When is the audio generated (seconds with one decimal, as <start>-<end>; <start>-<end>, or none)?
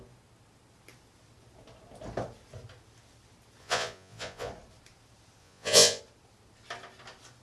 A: 3.6-4.5; 5.4-6.0